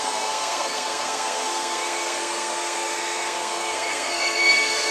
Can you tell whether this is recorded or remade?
remade